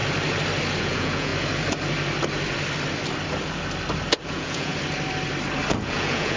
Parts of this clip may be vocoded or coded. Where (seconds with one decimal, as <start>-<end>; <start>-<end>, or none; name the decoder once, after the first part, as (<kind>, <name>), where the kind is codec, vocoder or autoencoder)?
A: 0.8-1.3 (vocoder, Vocos); 4.3-4.7; 5.8-6.4